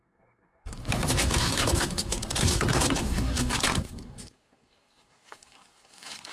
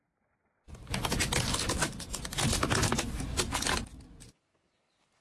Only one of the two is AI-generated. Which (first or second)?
first